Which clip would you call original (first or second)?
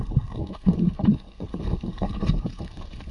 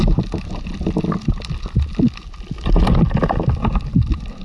second